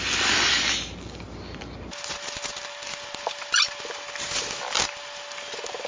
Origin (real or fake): real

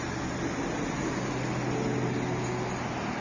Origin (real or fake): real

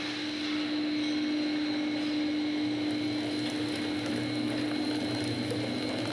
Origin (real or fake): real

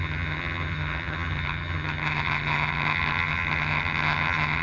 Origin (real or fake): fake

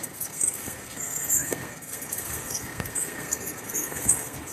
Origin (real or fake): fake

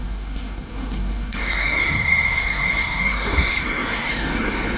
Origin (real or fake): fake